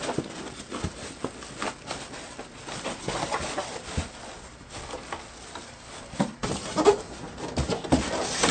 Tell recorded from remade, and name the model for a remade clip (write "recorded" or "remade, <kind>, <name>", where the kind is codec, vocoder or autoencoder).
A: recorded